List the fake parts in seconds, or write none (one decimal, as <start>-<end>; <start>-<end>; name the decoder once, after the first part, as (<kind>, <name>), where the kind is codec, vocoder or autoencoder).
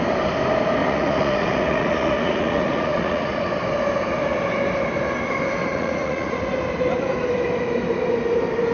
0.8-3.4 (vocoder, Vocos); 5.6-6.4